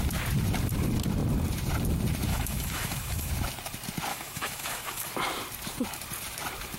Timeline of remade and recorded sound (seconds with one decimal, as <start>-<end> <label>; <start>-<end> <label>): 0.0-2.3 recorded; 2.3-3.3 remade; 3.3-4.1 recorded; 4.1-5.1 remade; 5.1-6.8 recorded